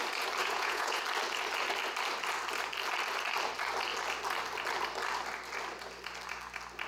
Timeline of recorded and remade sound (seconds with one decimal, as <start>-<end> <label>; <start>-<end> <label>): 0.0-0.4 recorded; 0.4-1.0 remade; 1.0-6.9 recorded